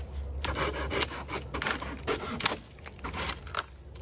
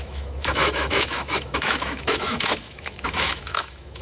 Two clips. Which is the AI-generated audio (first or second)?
second